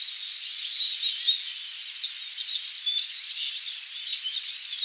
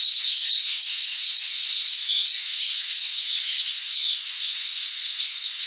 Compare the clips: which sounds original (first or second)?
first